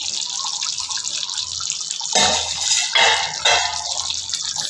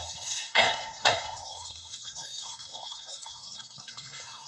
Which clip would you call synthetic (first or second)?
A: second